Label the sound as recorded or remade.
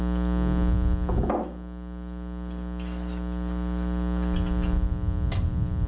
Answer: recorded